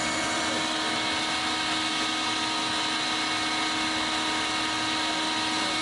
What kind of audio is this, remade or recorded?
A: recorded